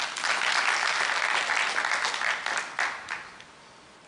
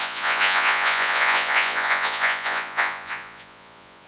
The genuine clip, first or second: first